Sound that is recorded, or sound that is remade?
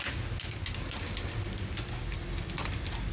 recorded